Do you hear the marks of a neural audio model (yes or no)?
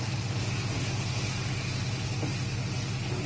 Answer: no